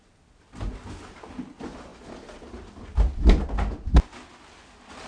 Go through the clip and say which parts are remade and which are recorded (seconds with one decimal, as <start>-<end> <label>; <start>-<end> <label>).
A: 0.0-5.1 recorded